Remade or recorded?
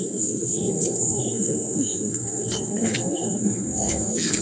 remade